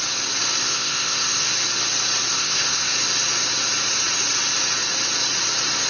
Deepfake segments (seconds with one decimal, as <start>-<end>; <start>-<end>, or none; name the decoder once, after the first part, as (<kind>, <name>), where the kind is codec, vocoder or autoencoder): 0.6-1.5 (codec, ZipCodec); 2.3-2.9